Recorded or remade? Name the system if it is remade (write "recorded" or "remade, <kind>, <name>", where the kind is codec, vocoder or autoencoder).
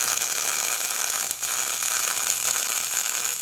remade, autoencoder, DAC-VAE